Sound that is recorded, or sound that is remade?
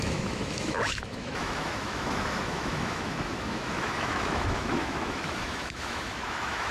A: remade